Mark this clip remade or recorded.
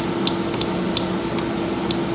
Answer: recorded